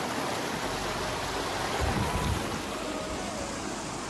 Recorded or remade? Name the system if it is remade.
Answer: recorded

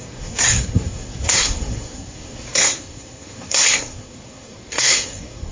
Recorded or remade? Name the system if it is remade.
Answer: remade, codec, SNAC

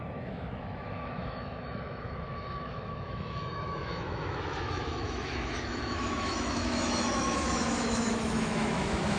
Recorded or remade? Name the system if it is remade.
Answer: remade, autoencoder, DAC-VAE